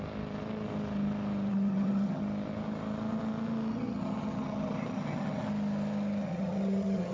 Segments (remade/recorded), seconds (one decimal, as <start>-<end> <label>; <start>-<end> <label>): 0.0-1.5 recorded; 1.5-2.2 remade; 2.2-3.7 recorded; 3.7-5.5 remade; 5.5-6.2 recorded; 6.2-7.1 remade